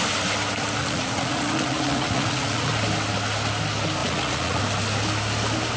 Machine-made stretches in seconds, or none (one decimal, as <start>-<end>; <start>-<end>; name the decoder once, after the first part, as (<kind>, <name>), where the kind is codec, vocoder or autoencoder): 0.8-2.7 (vocoder, Vocos); 4.0-4.6

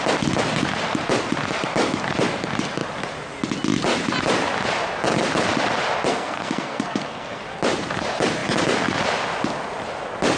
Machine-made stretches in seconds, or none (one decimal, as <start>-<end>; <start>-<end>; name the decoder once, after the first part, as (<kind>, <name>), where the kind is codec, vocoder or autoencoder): 6.1-7.4 (codec, SNAC)

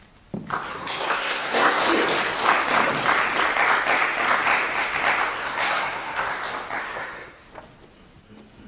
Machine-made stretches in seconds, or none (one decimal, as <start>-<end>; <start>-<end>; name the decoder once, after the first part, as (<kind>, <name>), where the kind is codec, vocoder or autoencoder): 0.7-1.8 (codec, SNAC); 5.4-6.3; 6.8-7.5